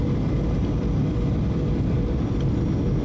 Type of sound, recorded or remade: recorded